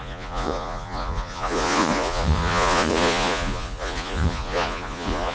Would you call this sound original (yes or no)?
no